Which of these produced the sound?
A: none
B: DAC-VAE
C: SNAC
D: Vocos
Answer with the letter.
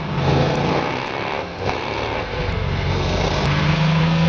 C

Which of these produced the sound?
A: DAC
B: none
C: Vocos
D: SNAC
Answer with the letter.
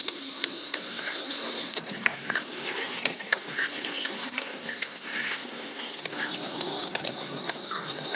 D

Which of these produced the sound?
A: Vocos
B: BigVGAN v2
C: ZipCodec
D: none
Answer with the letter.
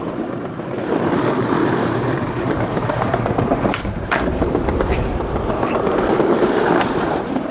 B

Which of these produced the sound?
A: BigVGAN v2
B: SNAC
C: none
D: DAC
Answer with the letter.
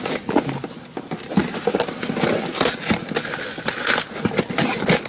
C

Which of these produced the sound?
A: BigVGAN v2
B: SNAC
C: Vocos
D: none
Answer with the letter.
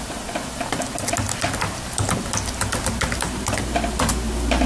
D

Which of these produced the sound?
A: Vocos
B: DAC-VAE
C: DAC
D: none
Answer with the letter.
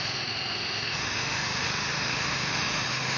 B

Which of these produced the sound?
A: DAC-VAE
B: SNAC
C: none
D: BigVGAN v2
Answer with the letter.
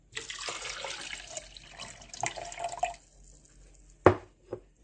C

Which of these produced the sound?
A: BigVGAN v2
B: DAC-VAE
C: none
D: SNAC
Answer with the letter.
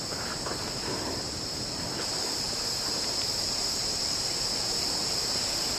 A